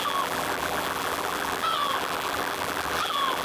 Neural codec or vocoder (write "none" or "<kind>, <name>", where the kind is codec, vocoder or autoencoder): vocoder, BigVGAN v2